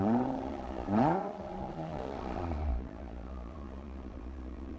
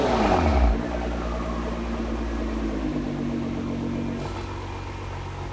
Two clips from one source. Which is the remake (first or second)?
first